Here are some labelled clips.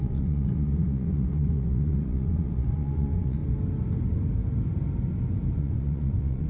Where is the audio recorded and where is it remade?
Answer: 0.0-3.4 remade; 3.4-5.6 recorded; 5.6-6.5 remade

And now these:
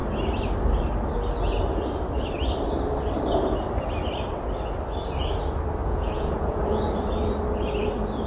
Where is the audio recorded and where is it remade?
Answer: 0.0-5.8 recorded; 5.8-6.6 remade; 6.6-8.3 recorded

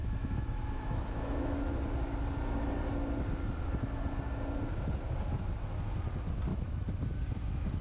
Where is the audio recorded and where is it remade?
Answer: 0.0-1.7 remade; 1.7-6.5 recorded; 6.5-7.0 remade; 7.0-7.8 recorded

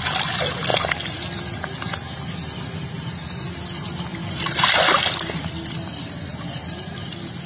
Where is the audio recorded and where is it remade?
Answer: 0.0-4.1 recorded; 4.1-5.0 remade; 5.0-6.3 recorded; 6.3-7.1 remade; 7.1-7.5 recorded

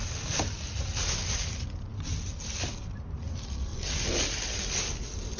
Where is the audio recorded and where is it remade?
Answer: 0.0-5.4 recorded